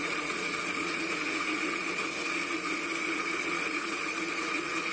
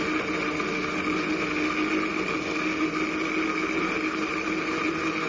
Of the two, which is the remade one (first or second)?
first